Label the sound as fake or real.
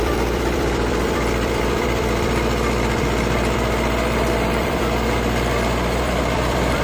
fake